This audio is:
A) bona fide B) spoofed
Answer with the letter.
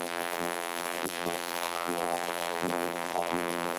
B